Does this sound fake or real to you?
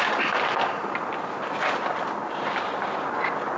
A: real